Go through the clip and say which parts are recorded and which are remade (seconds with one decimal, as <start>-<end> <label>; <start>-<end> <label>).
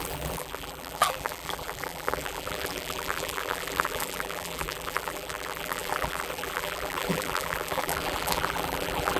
0.0-9.2 remade